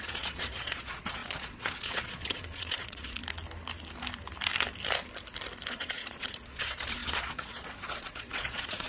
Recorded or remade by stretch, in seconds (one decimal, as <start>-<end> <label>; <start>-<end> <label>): 0.0-3.2 remade; 3.2-5.7 recorded; 5.7-8.9 remade